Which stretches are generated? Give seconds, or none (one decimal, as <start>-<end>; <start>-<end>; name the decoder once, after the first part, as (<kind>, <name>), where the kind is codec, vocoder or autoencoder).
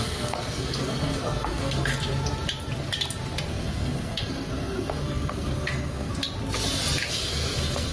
0.0-1.9 (codec, SNAC); 3.5-6.1; 7.1-7.9